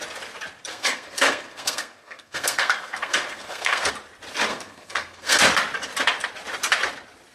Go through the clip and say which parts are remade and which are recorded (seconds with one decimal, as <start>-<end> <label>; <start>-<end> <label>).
0.0-0.7 recorded; 0.7-3.9 remade; 3.9-4.5 recorded; 4.5-5.4 remade; 5.4-7.3 recorded

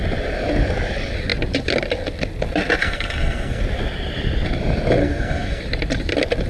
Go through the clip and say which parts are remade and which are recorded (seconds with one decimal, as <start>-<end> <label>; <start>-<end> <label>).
0.0-2.8 recorded; 2.8-3.6 remade; 3.6-5.0 recorded; 5.0-5.6 remade; 5.6-6.5 recorded

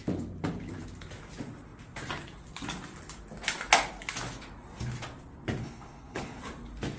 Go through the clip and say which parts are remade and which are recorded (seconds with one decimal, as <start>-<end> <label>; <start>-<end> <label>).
0.0-5.6 recorded; 5.6-6.4 remade; 6.4-7.0 recorded

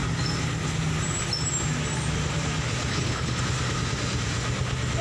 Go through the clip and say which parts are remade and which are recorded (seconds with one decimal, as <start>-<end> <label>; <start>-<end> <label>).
0.0-2.9 recorded; 2.9-3.4 remade; 3.4-5.0 recorded

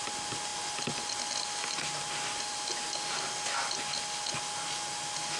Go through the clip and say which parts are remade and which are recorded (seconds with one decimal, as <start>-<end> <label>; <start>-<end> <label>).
0.0-5.4 recorded

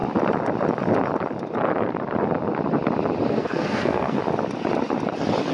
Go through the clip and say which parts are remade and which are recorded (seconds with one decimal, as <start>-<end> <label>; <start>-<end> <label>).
0.0-3.3 recorded; 3.3-4.2 remade; 4.2-5.5 recorded

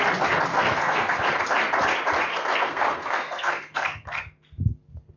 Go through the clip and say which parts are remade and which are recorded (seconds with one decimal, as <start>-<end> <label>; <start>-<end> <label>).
0.0-0.5 recorded; 0.5-1.2 remade; 1.2-2.3 recorded; 2.3-4.2 remade; 4.2-5.2 recorded